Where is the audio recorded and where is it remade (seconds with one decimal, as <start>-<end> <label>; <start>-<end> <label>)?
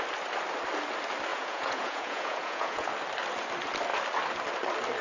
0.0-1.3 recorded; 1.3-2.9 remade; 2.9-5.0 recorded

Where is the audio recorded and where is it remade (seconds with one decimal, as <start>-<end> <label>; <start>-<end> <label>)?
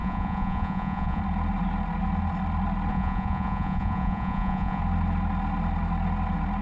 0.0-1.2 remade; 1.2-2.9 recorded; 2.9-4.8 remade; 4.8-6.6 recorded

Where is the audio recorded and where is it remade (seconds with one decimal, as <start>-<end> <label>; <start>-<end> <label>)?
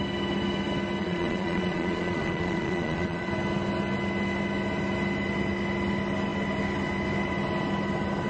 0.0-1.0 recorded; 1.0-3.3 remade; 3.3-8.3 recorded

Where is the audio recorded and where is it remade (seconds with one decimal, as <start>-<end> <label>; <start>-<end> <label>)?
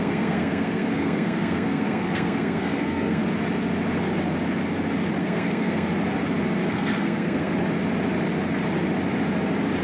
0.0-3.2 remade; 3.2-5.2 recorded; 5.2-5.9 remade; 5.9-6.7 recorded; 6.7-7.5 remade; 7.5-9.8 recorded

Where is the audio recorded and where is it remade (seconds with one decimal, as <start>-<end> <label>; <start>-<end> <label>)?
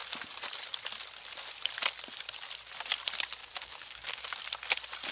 0.0-3.4 recorded; 3.4-4.2 remade; 4.2-5.1 recorded